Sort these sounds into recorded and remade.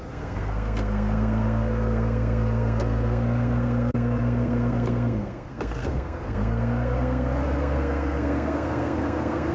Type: remade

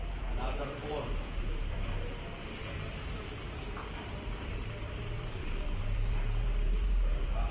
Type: remade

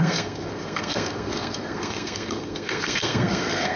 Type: remade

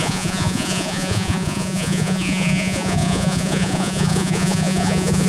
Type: remade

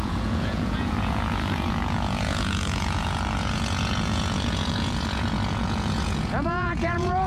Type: remade